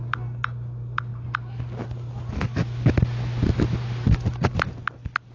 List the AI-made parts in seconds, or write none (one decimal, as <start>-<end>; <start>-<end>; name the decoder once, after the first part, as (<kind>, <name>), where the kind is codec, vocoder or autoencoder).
none